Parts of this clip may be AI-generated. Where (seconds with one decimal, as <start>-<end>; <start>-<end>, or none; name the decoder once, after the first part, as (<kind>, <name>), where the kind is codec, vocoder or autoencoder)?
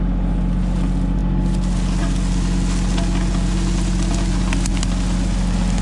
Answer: none